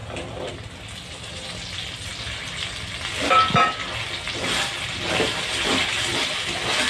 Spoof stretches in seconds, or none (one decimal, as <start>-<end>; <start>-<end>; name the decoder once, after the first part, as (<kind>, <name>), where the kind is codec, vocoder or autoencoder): 0.0-0.5 (vocoder, BigVGAN v2)